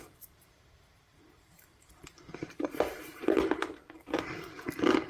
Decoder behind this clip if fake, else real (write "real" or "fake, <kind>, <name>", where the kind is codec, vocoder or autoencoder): fake, vocoder, BigVGAN v2